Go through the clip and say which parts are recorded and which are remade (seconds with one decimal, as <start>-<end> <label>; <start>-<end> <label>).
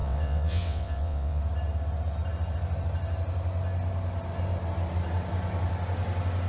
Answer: 0.0-1.4 remade; 1.4-6.5 recorded